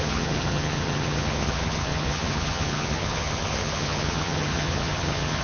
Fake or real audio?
fake